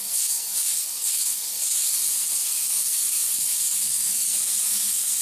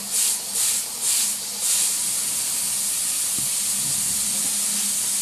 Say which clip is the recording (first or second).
second